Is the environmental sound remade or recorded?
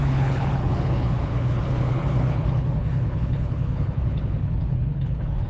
remade